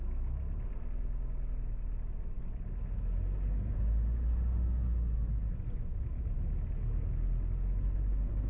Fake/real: real